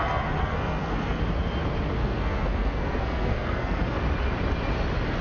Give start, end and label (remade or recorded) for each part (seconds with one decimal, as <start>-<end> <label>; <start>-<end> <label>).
0.0-0.4 recorded; 0.4-1.2 remade; 1.2-2.0 recorded; 2.0-4.0 remade; 4.0-5.2 recorded